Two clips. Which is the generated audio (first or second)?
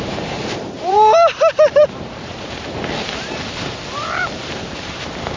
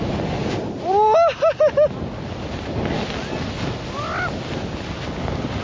first